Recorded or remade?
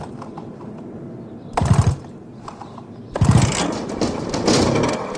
remade